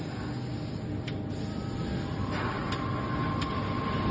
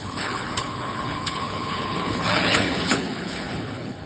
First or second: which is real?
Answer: first